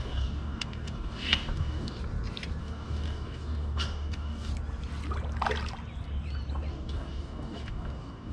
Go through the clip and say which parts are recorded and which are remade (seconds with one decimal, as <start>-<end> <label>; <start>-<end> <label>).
0.0-2.0 remade; 2.0-2.6 recorded; 2.6-4.5 remade; 4.5-6.7 recorded; 6.7-8.3 remade